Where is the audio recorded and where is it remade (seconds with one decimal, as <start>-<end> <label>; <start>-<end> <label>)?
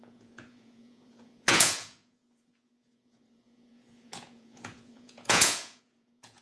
0.0-6.4 remade